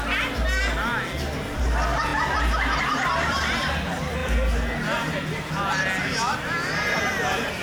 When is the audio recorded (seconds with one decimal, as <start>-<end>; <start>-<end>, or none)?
0.0-7.6